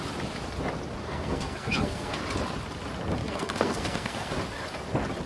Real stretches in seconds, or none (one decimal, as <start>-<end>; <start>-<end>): 0.0-1.0; 2.2-3.2; 4.3-5.3